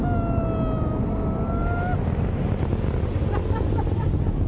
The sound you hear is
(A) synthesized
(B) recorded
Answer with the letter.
B